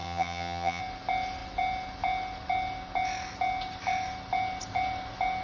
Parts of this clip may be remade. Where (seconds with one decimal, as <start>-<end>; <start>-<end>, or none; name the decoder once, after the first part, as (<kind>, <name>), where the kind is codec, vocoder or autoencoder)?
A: 0.0-0.8 (vocoder, HiFi-GAN)